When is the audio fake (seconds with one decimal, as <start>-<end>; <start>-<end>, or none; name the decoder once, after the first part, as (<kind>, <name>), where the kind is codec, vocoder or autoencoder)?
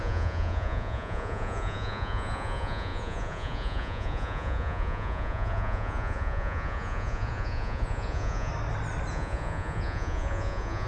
0.0-8.5 (vocoder, Vocos); 9.1-10.9